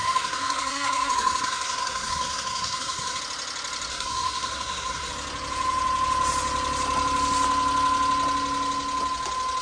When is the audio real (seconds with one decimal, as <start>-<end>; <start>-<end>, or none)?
3.2-3.9; 5.1-9.6